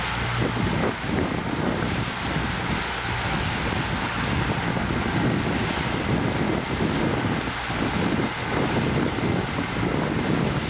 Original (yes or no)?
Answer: yes